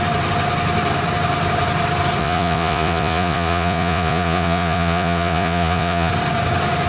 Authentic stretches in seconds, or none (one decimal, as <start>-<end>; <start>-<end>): 0.0-2.2; 6.1-6.9